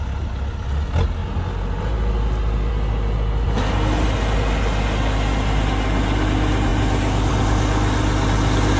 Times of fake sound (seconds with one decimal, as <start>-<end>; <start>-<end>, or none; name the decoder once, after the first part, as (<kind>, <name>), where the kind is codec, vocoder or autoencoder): none